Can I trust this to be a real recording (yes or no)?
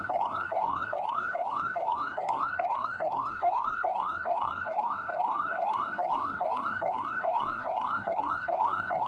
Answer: no